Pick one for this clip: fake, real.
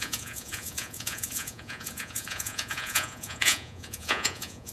fake